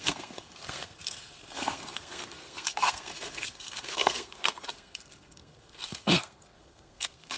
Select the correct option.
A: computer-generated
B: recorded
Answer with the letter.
A